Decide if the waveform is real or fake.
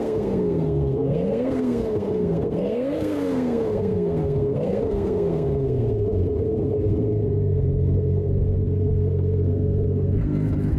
fake